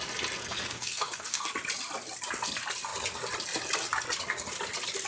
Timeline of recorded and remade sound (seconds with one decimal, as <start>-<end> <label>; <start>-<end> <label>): 0.0-0.4 recorded; 0.4-1.5 remade; 1.5-5.1 recorded